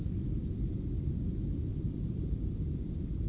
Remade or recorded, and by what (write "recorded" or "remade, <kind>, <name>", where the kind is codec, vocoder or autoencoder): remade, vocoder, BigVGAN v2